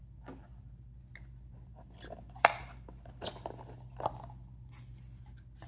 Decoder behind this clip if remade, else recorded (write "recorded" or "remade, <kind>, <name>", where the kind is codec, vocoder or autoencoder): recorded